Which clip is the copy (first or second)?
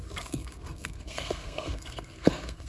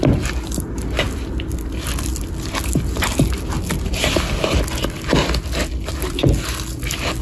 first